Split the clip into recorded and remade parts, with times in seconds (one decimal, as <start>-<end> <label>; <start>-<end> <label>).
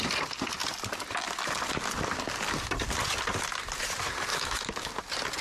0.0-4.3 recorded; 4.3-4.9 remade; 4.9-5.4 recorded